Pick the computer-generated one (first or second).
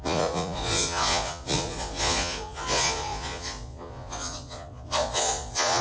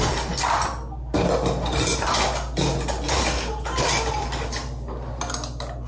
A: first